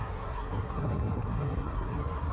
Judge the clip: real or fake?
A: fake